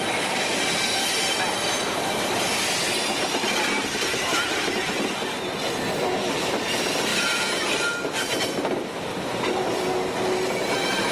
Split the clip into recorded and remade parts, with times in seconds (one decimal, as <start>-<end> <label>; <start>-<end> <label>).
0.0-7.1 recorded; 7.1-7.7 remade; 7.7-11.1 recorded